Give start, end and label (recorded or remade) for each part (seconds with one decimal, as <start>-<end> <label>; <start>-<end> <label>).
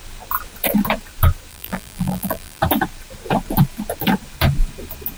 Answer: 0.0-1.5 recorded; 1.5-2.6 remade; 2.6-5.2 recorded